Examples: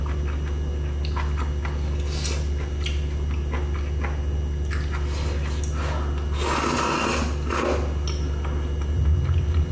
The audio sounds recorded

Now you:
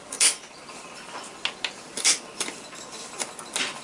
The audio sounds recorded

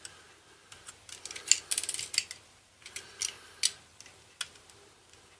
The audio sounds recorded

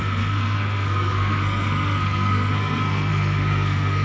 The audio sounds remade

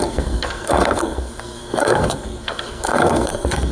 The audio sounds remade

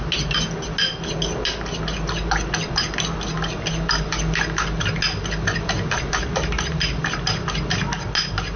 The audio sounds recorded